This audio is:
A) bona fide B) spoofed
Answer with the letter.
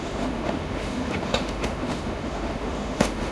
B